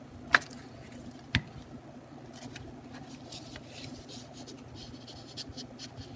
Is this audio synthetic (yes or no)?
no